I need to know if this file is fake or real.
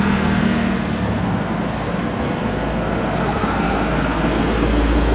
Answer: fake